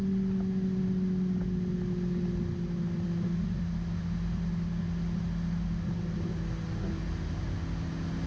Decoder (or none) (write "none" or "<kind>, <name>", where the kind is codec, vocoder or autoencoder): none